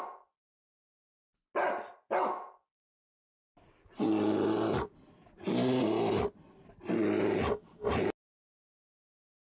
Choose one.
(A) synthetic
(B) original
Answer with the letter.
B